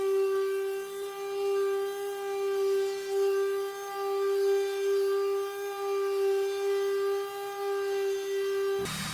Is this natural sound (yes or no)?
yes